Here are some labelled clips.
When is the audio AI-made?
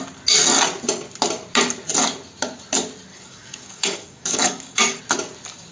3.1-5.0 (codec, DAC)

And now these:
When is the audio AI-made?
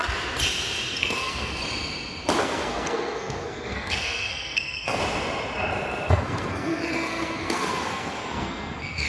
1.0-1.6 (codec, SNAC); 2.4-5.0; 6.1-9.1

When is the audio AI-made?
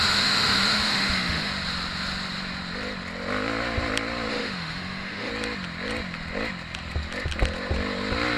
0.0-1.5 (autoencoder, DAC-VAE); 4.3-5.3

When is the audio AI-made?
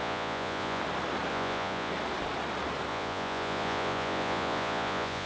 0.0-0.8 (vocoder, Vocos); 1.3-1.9; 2.9-5.3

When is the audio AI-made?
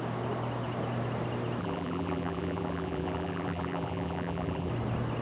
1.6-4.7 (vocoder, BigVGAN v2)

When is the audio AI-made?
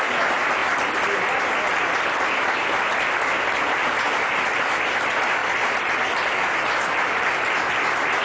none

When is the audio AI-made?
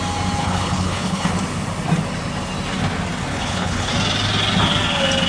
0.4-1.3 (codec, HILCodec); 3.3-3.9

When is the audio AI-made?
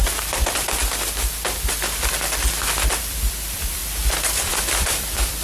0.0-0.8 (vocoder, BigVGAN v2); 3.0-5.4